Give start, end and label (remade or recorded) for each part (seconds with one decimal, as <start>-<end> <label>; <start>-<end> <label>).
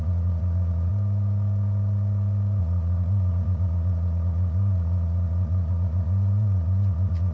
0.0-0.9 remade; 0.9-2.6 recorded; 2.6-7.3 remade